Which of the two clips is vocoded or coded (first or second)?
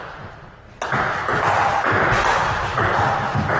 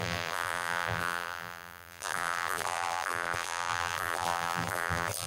second